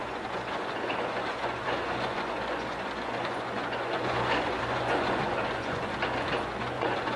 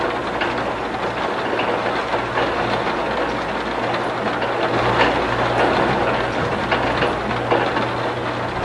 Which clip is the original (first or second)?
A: second